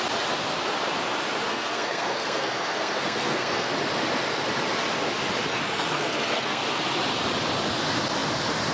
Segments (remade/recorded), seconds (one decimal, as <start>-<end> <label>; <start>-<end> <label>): 0.0-1.5 recorded; 1.5-3.7 remade; 3.7-5.5 recorded; 5.5-6.6 remade; 6.6-8.7 recorded